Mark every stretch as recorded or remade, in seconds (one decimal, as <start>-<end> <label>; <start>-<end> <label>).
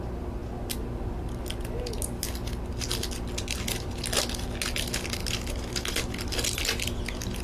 0.0-7.4 recorded